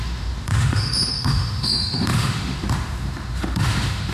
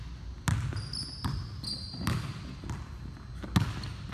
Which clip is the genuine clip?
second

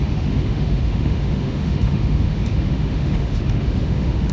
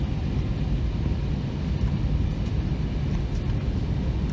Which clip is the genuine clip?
second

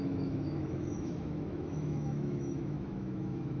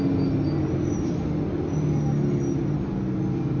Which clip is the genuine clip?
second